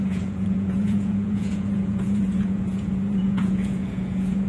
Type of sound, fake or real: fake